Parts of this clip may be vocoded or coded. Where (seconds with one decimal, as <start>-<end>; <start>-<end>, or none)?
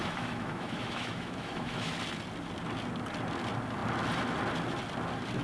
0.0-1.9